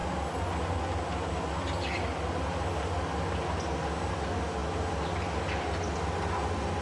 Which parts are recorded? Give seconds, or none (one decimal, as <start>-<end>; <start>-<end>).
0.0-6.8